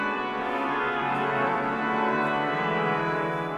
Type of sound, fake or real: fake